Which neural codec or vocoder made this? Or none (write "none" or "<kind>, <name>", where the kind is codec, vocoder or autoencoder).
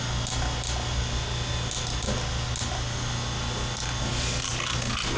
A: none